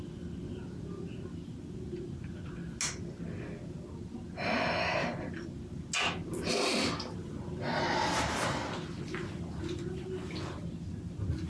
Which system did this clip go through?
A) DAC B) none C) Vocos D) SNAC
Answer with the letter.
B